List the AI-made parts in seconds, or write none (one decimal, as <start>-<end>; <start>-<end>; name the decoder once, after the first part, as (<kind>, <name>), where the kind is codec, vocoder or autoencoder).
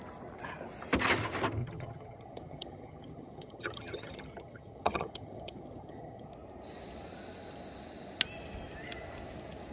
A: 1.6-6.3 (vocoder, HiFi-GAN)